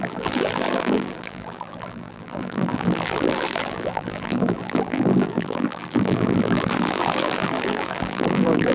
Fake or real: fake